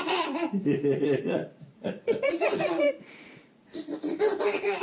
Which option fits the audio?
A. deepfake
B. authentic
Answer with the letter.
A